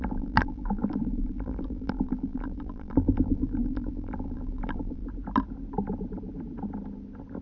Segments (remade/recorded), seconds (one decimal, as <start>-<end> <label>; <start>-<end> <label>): 0.0-5.0 remade; 5.0-7.4 recorded